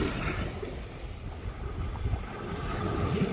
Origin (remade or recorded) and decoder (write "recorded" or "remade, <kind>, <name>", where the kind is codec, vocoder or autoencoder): recorded